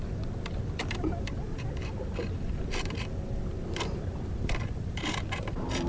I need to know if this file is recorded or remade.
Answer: remade